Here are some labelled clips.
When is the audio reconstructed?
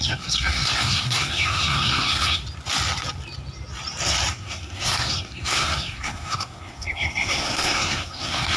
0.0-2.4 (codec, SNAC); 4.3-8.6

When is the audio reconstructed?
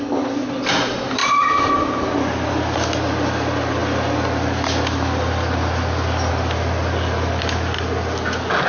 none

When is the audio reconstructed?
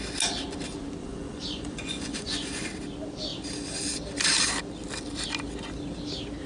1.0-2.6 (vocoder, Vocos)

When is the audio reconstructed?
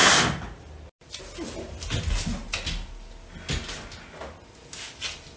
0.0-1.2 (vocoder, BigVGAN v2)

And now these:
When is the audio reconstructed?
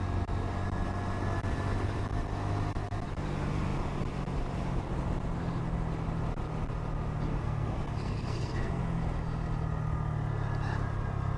7.3-8.8 (codec, SNAC)